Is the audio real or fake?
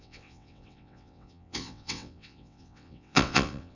fake